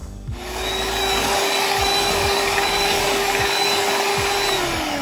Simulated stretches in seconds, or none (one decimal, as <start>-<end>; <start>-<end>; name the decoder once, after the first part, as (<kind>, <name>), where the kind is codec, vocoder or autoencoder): 0.0-4.1 (codec, DAC); 4.6-5.0